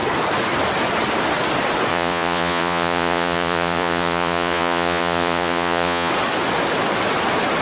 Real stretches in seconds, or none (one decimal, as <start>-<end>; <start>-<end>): 0.0-1.9; 6.1-7.6